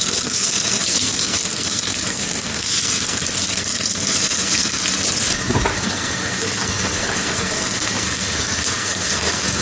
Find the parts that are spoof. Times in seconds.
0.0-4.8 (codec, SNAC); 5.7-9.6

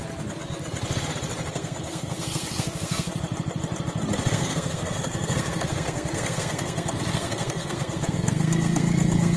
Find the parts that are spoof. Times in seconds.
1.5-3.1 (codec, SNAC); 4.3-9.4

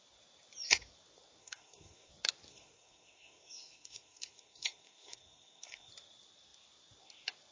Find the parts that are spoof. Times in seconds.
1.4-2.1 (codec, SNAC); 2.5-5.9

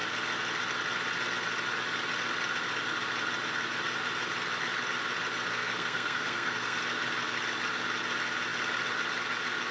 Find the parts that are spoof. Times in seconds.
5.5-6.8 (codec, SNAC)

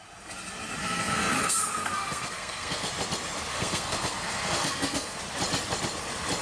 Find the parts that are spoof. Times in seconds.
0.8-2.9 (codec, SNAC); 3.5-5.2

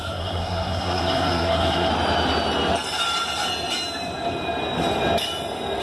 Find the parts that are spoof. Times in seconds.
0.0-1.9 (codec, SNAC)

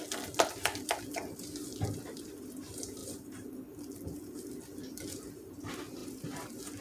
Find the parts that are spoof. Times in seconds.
none

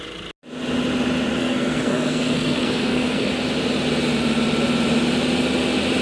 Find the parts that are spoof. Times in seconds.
1.4-3.3 (codec, SNAC)